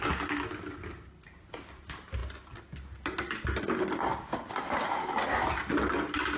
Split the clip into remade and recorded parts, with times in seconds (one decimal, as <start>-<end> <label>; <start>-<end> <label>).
0.0-6.4 recorded